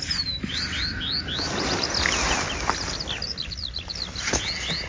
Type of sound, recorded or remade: recorded